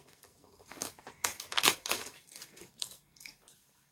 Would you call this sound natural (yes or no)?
no